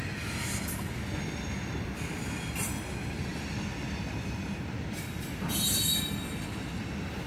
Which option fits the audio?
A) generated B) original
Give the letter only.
B